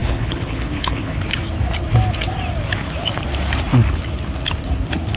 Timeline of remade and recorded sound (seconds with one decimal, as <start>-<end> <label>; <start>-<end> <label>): 0.0-1.2 remade; 1.2-5.2 recorded